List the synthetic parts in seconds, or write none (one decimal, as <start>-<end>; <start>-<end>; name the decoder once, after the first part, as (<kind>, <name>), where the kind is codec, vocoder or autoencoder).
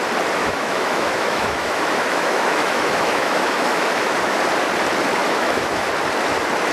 0.4-4.4 (autoencoder, DAC-VAE); 5.2-5.9